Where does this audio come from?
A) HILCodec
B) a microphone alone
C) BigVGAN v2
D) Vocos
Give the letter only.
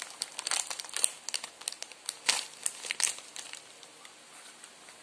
B